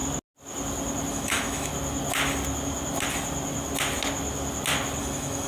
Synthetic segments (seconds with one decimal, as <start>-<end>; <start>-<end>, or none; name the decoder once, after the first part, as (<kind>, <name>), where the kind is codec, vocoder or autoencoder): 1.1-1.7 (autoencoder, DAC-VAE); 5.0-5.5